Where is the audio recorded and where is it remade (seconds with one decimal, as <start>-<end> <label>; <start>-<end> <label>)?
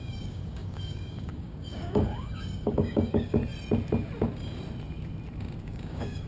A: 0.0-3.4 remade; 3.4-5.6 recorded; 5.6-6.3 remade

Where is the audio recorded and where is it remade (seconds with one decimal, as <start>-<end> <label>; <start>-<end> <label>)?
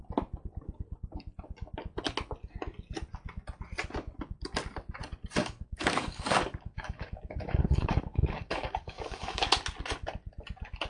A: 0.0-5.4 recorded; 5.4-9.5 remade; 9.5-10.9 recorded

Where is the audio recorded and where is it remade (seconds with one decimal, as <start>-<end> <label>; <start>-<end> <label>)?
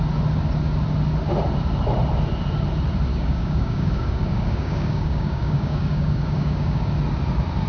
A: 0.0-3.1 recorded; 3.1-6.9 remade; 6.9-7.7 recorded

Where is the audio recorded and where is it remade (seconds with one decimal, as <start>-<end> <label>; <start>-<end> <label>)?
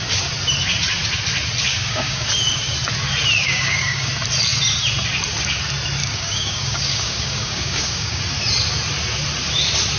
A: 0.0-1.7 recorded; 1.7-2.3 remade; 2.3-3.4 recorded; 3.4-4.1 remade; 4.1-6.0 recorded; 6.0-8.2 remade; 8.2-10.0 recorded